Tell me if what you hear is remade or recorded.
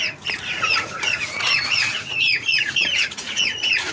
remade